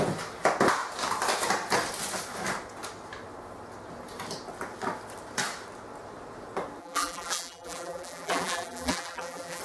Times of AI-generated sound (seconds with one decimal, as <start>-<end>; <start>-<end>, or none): 6.8-9.6